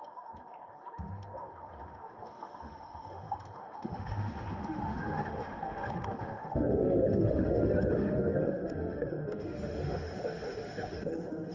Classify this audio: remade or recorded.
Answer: remade